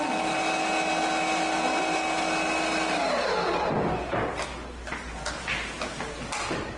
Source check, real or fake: real